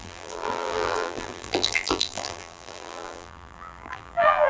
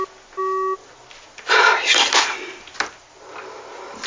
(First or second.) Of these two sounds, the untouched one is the second